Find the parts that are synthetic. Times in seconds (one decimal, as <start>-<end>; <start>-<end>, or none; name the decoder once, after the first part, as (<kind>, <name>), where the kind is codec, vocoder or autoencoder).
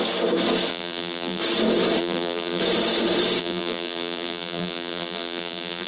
0.7-1.4 (vocoder, BigVGAN v2); 2.0-2.6; 3.4-5.9